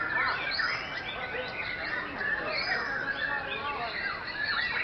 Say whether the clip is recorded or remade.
recorded